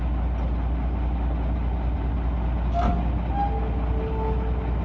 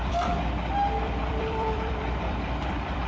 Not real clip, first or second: second